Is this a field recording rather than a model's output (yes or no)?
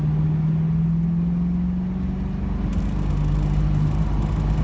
yes